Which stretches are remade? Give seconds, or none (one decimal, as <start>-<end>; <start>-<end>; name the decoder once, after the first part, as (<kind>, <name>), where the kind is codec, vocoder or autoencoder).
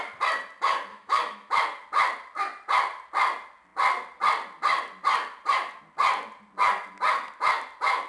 0.9-1.5 (autoencoder, DAC-VAE)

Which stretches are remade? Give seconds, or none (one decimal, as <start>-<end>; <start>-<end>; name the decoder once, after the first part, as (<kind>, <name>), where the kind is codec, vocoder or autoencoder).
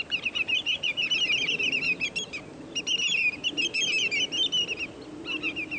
none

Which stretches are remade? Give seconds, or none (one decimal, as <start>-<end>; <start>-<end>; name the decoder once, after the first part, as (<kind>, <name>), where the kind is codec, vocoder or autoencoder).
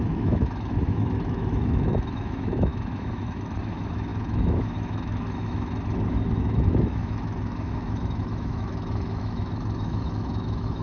0.0-10.8 (autoencoder, DAC-VAE)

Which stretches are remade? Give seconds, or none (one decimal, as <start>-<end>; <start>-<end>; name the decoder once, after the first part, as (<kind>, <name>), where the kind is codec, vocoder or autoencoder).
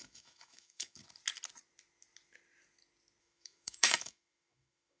0.0-1.0 (autoencoder, DAC-VAE); 3.2-5.0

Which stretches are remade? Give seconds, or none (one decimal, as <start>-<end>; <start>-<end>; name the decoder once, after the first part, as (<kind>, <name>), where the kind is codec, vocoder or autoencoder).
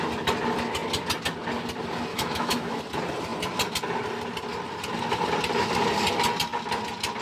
2.1-2.8 (autoencoder, DAC-VAE)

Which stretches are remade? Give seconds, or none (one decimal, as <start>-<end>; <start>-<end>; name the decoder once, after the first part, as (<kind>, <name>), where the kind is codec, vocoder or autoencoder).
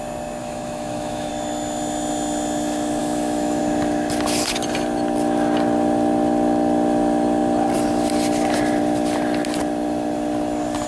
0.4-1.3 (autoencoder, DAC-VAE); 3.0-3.6